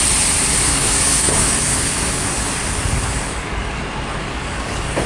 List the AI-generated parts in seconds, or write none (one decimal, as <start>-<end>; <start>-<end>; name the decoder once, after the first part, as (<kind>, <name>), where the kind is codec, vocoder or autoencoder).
0.7-3.8 (codec, DAC); 4.2-5.1